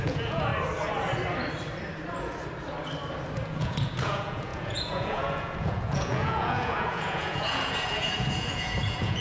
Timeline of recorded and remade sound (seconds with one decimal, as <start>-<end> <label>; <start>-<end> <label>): 0.0-0.5 remade; 0.5-3.5 recorded; 3.5-9.2 remade